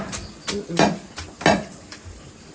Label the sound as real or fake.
real